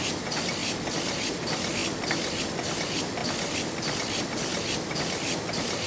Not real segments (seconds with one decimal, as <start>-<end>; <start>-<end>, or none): none